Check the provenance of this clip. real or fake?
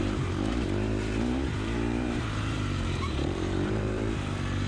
fake